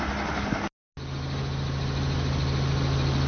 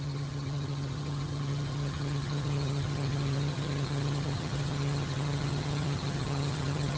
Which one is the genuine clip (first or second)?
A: first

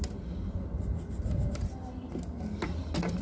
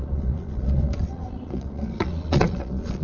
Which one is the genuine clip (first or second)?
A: first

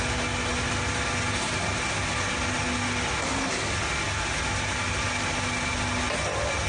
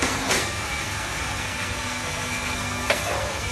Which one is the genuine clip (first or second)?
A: first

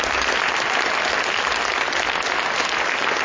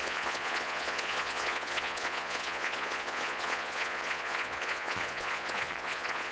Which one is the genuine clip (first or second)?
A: first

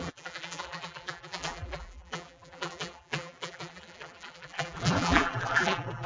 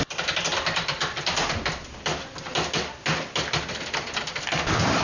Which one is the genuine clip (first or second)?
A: second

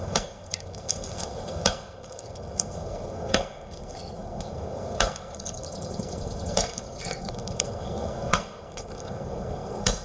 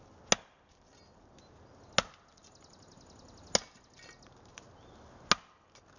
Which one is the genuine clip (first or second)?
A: second